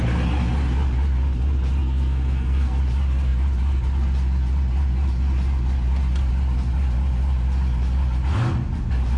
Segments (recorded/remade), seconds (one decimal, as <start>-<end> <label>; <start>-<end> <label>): 0.0-1.8 recorded; 1.8-2.8 remade; 2.8-9.2 recorded